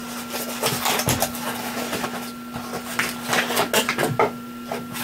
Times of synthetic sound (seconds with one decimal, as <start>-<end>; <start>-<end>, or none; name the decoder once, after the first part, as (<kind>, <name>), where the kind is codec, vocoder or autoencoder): none